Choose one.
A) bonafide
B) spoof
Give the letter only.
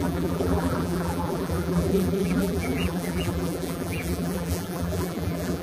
B